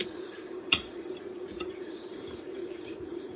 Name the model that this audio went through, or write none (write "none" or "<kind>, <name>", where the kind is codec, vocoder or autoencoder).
vocoder, Vocos